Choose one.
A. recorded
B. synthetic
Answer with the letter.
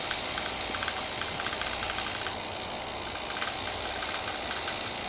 A